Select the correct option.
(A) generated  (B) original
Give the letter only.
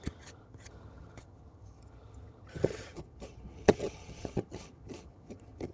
A